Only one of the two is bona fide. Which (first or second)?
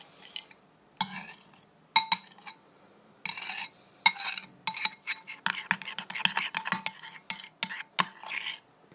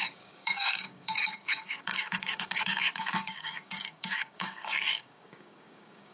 first